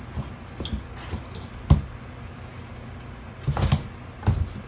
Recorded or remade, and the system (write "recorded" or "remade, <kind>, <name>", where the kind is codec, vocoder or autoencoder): recorded